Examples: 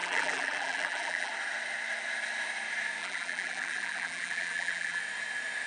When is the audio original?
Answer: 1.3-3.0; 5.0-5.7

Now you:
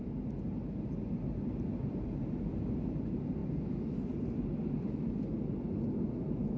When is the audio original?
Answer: 0.0-6.6